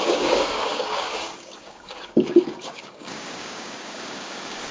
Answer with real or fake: fake